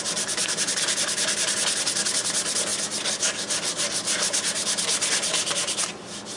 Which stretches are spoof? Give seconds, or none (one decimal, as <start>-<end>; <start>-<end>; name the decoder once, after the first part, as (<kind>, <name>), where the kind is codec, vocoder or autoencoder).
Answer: none